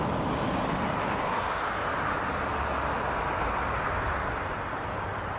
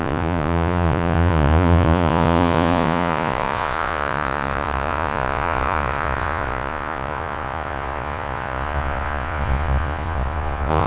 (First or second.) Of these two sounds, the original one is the first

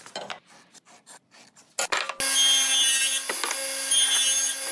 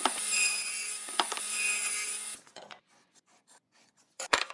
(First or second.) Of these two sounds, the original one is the first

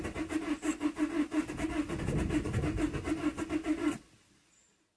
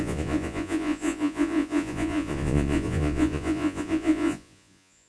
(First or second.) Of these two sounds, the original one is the first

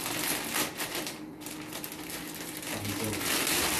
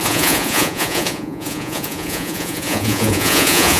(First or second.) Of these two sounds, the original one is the first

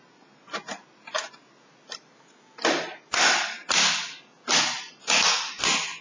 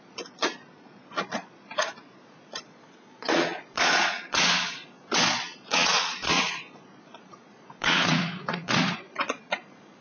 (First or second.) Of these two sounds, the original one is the first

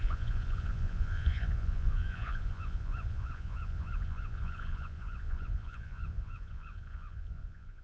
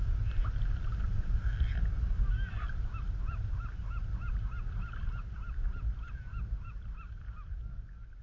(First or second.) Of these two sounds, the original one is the second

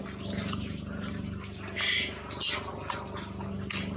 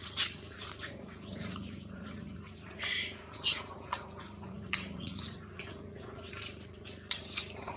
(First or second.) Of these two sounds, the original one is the first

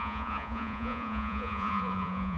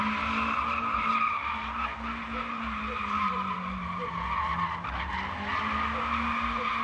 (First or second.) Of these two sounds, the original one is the second